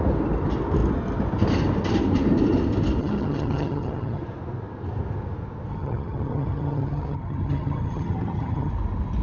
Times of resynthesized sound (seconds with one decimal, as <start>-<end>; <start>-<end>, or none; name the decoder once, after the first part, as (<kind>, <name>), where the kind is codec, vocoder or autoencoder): 3.0-4.2 (vocoder, HiFi-GAN); 5.7-8.7